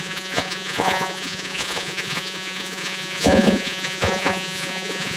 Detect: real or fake fake